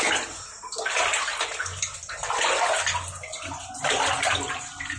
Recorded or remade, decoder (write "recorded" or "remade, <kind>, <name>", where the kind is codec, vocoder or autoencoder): recorded